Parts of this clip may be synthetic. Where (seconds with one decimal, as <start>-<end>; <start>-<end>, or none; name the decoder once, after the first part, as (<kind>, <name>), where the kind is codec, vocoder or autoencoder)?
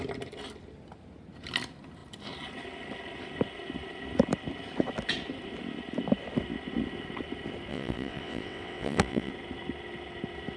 7.7-9.3 (vocoder, WaveNeXt)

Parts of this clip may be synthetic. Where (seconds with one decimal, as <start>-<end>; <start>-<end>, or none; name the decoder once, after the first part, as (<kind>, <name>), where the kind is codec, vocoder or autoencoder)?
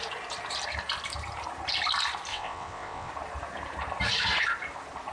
2.3-3.1 (vocoder, WaveNeXt)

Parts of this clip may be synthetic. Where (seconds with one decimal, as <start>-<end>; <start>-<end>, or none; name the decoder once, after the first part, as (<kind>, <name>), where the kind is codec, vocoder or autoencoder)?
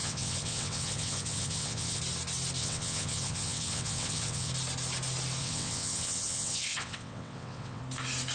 0.0-2.0 (vocoder, WaveNeXt); 2.6-4.5; 5.4-7.8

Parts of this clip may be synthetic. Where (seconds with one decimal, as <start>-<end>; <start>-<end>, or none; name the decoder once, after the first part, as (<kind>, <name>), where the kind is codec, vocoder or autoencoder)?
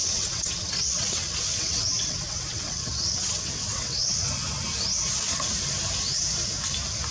0.0-4.3 (vocoder, WaveNeXt)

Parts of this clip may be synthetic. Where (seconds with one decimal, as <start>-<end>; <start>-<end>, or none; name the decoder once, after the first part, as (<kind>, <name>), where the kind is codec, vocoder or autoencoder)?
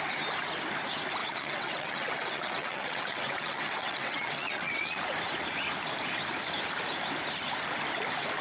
1.2-5.0 (vocoder, WaveNeXt)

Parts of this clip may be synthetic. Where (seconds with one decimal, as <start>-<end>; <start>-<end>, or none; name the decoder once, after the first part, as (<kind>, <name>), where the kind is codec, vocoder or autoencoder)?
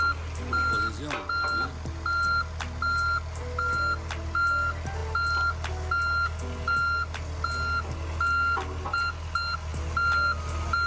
none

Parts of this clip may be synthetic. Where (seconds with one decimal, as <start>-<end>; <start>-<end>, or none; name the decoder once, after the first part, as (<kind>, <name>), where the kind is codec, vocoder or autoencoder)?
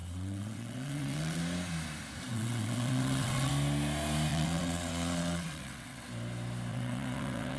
0.0-1.4 (vocoder, WaveNeXt); 2.3-3.5; 4.3-6.1; 6.7-7.6